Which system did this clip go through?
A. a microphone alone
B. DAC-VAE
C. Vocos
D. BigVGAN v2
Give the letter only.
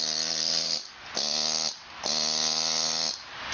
A